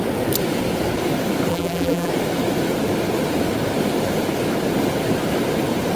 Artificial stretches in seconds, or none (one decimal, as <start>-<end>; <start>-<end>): 1.5-2.1